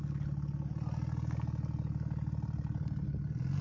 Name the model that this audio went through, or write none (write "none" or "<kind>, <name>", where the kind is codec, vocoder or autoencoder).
none